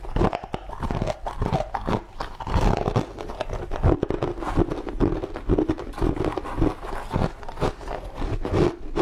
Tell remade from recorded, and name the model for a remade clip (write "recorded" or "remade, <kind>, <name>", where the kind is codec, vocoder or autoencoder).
recorded